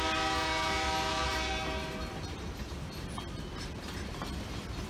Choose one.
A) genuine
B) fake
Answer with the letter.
A